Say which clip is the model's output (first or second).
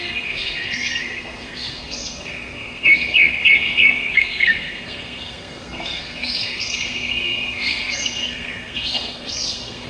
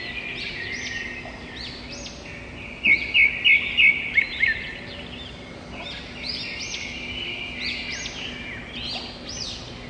first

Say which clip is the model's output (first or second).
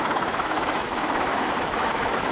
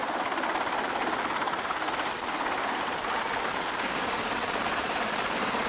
first